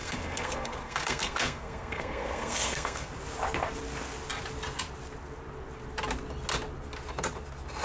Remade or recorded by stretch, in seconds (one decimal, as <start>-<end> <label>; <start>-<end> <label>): 0.0-3.1 remade; 3.1-7.8 recorded